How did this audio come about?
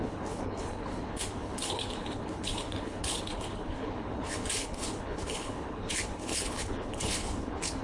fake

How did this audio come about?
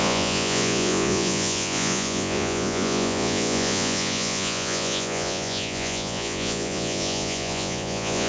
fake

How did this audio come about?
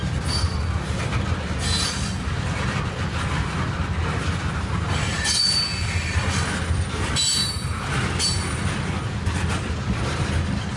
real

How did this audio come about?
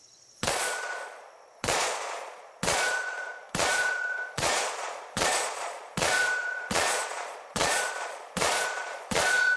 fake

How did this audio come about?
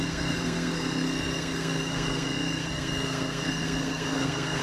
fake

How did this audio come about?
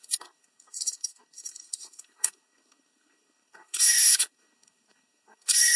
fake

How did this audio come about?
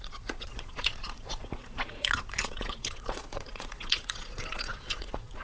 fake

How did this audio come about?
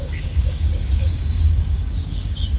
fake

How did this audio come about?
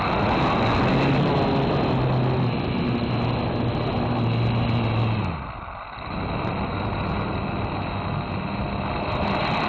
real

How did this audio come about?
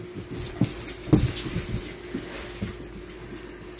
real